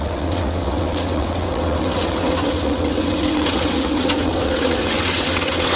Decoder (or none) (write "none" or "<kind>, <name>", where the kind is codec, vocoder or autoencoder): vocoder, WaveNeXt